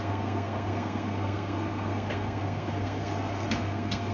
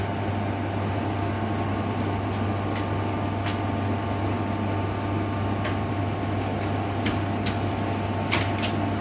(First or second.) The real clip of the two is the second